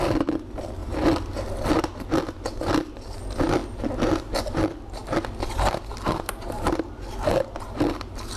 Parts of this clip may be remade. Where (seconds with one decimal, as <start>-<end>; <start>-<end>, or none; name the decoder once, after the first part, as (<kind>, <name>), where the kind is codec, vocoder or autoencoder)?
none